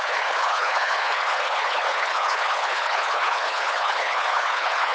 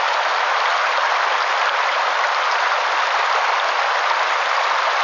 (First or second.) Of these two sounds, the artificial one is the first